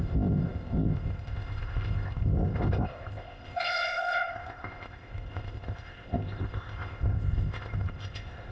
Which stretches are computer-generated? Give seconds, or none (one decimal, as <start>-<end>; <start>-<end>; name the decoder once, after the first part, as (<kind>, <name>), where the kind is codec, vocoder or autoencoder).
0.0-8.5 (codec, ZipCodec)